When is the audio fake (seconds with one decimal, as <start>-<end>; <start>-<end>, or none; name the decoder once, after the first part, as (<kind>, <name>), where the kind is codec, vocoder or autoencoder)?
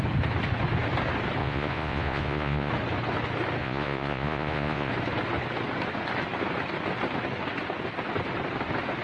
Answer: 1.4-2.7 (vocoder, Vocos); 3.6-4.9